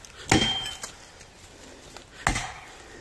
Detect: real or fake real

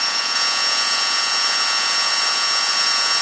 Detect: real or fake fake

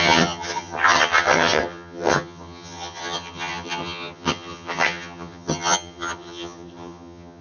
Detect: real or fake fake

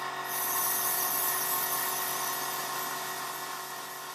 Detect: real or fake real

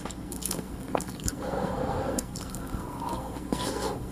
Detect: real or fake fake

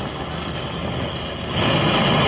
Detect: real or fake real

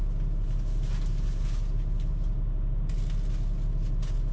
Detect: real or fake real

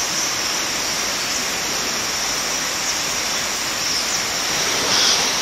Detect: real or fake real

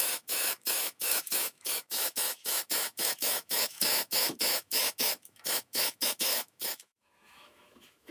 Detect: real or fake fake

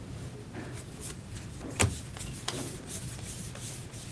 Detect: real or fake fake